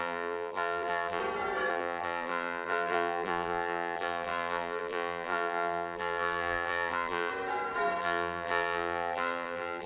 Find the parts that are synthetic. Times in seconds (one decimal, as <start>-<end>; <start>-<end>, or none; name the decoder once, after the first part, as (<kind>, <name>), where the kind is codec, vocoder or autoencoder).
0.0-1.2 (vocoder, BigVGAN v2); 1.7-7.3; 8.0-9.9